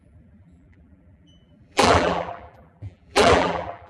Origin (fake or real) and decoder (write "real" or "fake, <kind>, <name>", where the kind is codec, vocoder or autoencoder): fake, vocoder, BigVGAN v2